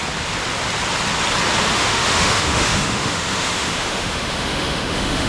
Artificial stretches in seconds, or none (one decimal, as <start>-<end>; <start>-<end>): 1.7-5.3